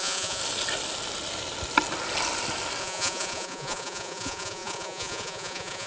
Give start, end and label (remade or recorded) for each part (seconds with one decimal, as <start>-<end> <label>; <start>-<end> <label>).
0.0-0.4 remade; 0.4-2.8 recorded; 2.8-5.9 remade